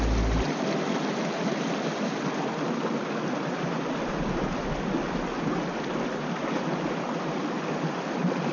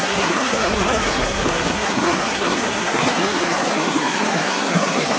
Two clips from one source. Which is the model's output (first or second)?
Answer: second